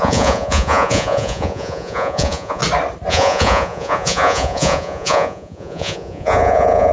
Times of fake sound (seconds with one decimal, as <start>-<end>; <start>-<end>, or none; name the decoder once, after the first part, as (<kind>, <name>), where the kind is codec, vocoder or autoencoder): 0.0-2.6 (vocoder, Vocos); 3.1-6.9